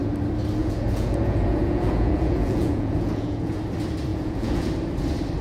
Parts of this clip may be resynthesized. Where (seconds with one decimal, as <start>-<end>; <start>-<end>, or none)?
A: 0.6-3.6; 4.1-4.7